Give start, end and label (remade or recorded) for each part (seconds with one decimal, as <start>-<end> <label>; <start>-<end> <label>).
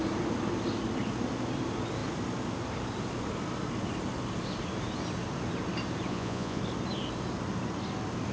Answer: 0.0-6.1 recorded; 6.1-6.6 remade; 6.6-8.3 recorded